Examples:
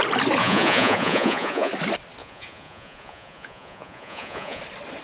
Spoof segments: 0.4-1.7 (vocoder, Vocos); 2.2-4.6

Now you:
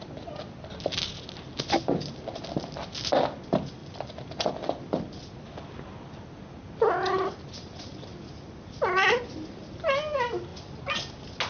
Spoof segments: 3.8-4.5 (vocoder, BigVGAN v2)

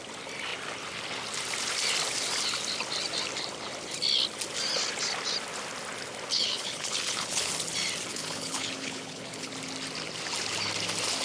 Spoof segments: 6.3-7.5 (codec, HILCodec); 8.1-9.5

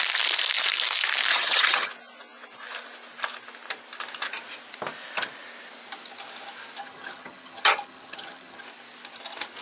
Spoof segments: 1.3-1.9 (vocoder, HiFi-GAN); 6.8-8.6

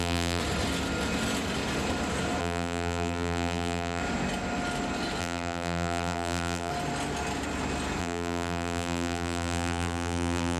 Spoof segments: 0.0-0.4 (vocoder, BigVGAN v2); 2.4-4.0; 5.2-6.7; 8.0-10.6

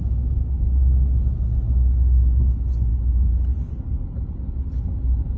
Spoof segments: none

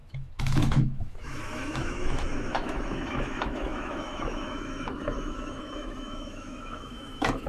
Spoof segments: 0.0-7.5 (autoencoder, DAC-VAE)

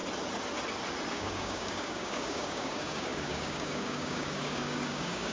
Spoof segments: 1.1-5.3 (codec, DAC)